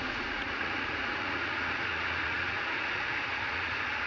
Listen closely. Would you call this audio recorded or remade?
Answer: remade